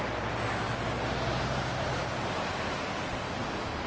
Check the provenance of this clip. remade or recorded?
recorded